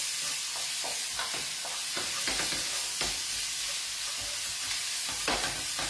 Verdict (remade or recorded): recorded